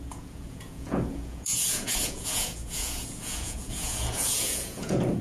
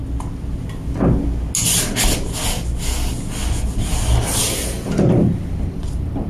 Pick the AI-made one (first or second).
first